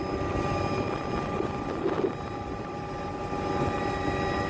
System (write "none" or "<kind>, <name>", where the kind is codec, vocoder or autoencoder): none